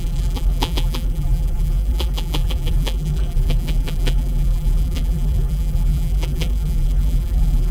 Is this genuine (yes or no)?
no